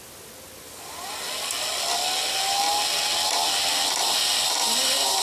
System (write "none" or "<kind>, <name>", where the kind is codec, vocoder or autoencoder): none